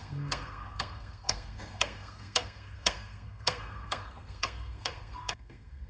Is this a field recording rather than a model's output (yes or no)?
no